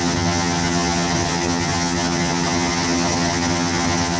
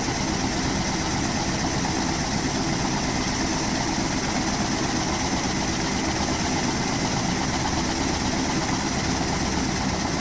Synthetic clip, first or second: first